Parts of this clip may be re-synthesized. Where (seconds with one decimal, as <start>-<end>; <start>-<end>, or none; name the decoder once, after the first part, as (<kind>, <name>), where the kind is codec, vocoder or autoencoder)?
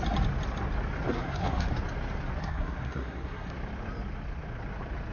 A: 1.1-1.7 (codec, SNAC); 2.4-3.5